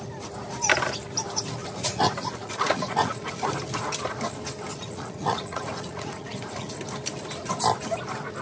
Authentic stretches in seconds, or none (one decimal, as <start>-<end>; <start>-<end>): 0.0-1.6; 3.5-4.7; 6.8-8.4